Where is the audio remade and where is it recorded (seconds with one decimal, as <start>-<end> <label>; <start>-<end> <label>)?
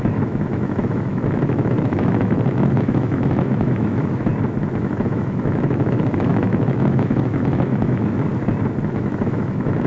0.0-4.3 remade; 4.3-4.8 recorded; 4.8-8.3 remade; 8.3-8.9 recorded; 8.9-9.9 remade